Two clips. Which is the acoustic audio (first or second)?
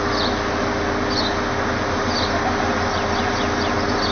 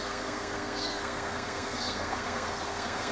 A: first